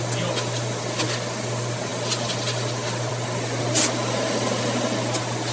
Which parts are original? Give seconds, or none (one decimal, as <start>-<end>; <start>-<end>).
0.0-5.5